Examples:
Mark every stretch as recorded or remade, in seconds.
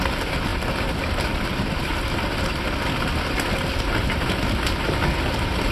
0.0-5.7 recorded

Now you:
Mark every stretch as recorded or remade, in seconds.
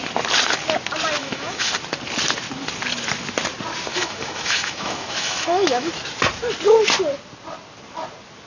0.0-1.2 recorded; 1.2-1.7 remade; 1.7-3.9 recorded; 3.9-5.9 remade; 5.9-8.5 recorded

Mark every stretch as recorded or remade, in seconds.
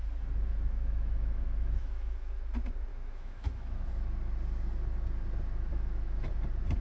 0.0-0.5 recorded; 0.5-2.4 remade; 2.4-2.9 recorded; 2.9-3.9 remade; 3.9-5.7 recorded; 5.7-6.3 remade; 6.3-6.8 recorded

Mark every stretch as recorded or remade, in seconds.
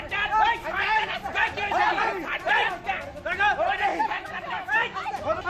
0.0-0.6 recorded; 0.6-1.1 remade; 1.1-3.9 recorded; 3.9-5.1 remade; 5.1-5.5 recorded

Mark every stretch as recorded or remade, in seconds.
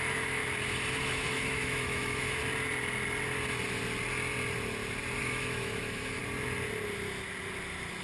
0.0-0.4 remade; 0.4-0.9 recorded; 0.9-2.4 remade; 2.4-5.2 recorded; 5.2-6.2 remade; 6.2-8.0 recorded